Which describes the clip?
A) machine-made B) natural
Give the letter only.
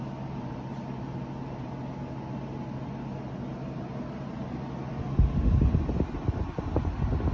B